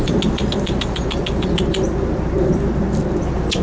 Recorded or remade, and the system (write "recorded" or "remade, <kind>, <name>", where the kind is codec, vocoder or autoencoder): recorded